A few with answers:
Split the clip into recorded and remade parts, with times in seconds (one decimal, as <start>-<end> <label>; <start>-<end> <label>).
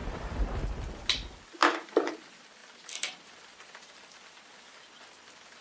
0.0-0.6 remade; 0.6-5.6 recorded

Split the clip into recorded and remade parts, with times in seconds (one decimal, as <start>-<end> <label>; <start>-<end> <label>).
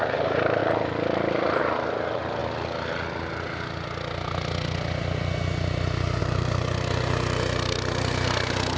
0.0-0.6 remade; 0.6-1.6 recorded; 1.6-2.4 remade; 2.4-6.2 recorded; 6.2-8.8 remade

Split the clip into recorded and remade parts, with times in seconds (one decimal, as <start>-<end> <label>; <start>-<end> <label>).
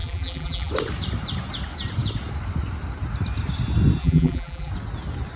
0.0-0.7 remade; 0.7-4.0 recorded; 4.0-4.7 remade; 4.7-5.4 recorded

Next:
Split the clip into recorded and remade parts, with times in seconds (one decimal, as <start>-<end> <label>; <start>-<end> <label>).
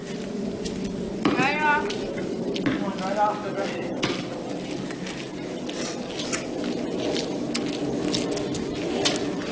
0.0-9.5 recorded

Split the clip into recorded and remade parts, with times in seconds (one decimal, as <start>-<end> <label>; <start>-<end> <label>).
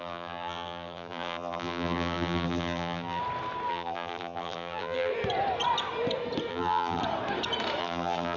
0.0-3.2 remade; 3.2-3.7 recorded; 3.7-5.1 remade; 5.1-6.5 recorded; 6.5-7.0 remade; 7.0-7.8 recorded; 7.8-8.4 remade